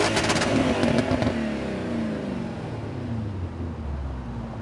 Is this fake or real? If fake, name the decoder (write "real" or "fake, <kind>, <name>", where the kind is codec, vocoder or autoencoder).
real